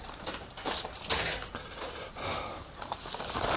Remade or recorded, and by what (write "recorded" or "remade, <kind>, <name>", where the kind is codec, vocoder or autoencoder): recorded